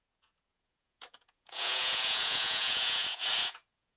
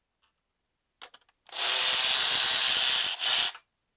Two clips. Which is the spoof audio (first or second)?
first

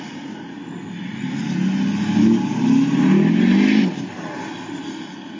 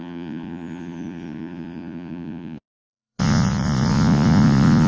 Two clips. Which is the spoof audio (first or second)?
second